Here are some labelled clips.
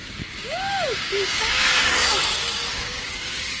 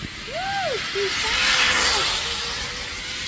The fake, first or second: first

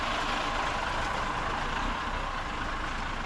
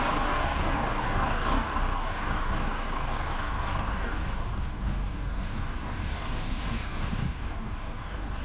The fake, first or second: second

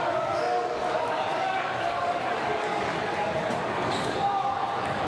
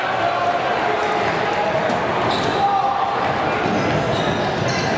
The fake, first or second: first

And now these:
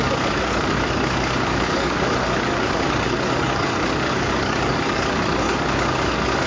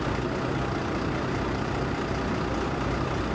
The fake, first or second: first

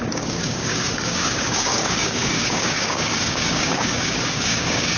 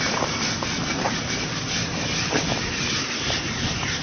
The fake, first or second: first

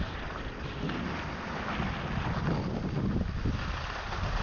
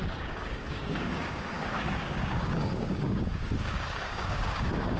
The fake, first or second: second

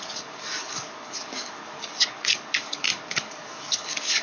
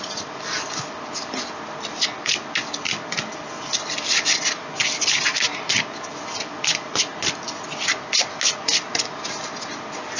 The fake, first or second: first